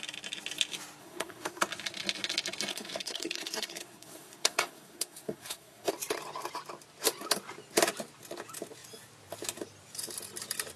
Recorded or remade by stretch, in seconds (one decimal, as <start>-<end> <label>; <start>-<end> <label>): 0.0-1.0 recorded; 1.0-1.6 remade; 1.6-2.7 recorded; 2.7-5.9 remade; 5.9-10.8 recorded